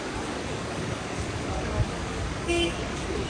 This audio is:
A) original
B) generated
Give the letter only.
B